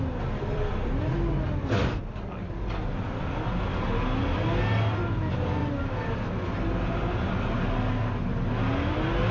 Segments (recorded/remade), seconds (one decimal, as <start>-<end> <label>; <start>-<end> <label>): 0.0-0.5 recorded; 0.5-2.0 remade; 2.0-9.3 recorded